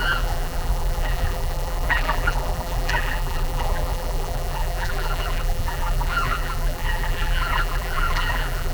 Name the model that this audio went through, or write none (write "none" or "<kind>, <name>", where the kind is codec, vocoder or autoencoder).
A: vocoder, BigVGAN v2